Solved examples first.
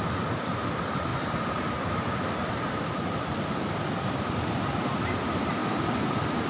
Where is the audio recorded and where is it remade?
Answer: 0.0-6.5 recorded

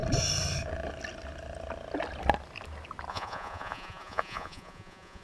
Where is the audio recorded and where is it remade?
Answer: 0.0-3.1 recorded; 3.1-5.2 remade

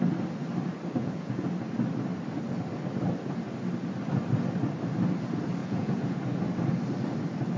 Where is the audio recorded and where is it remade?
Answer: 0.0-1.0 recorded; 1.0-1.5 remade; 1.5-5.6 recorded; 5.6-6.2 remade; 6.2-7.6 recorded

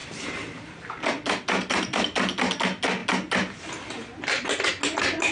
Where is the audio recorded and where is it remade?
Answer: 0.0-0.9 remade; 0.9-5.3 recorded

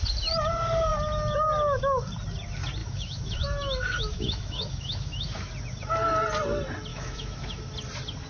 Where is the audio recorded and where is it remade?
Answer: 0.0-2.8 recorded; 2.8-5.5 remade; 5.5-6.9 recorded; 6.9-7.6 remade; 7.6-8.3 recorded

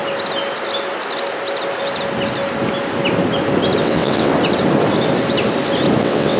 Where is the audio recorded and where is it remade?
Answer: 0.0-3.8 recorded; 3.8-4.3 remade; 4.3-6.0 recorded; 6.0-6.4 remade

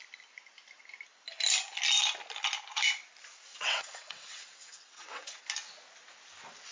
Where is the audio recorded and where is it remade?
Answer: 0.0-3.5 recorded; 3.5-5.4 remade; 5.4-6.7 recorded

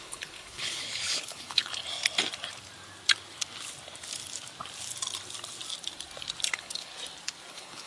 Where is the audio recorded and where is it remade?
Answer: 0.0-1.8 remade; 1.8-6.5 recorded; 6.5-6.9 remade; 6.9-7.5 recorded; 7.5-7.9 remade